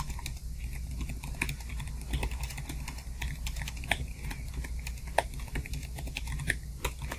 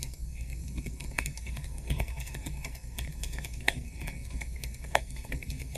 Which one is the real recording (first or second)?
first